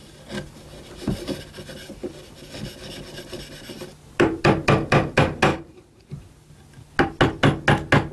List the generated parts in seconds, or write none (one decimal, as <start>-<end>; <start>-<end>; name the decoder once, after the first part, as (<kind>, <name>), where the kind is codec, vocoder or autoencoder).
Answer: 5.5-6.1 (vocoder, BigVGAN v2)